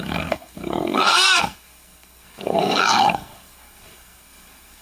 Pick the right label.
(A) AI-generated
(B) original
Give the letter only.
A